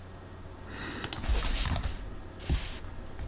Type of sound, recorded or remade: recorded